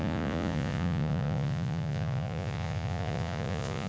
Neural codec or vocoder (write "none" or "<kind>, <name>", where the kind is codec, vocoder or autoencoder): vocoder, Vocos